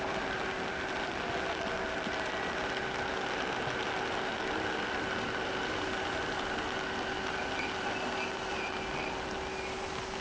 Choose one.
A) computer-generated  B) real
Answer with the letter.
B